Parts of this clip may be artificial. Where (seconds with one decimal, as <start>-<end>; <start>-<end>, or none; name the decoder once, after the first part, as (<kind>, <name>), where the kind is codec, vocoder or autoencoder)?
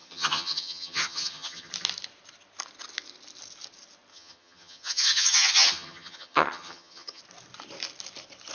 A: 0.0-1.7 (vocoder, HiFi-GAN); 4.1-7.2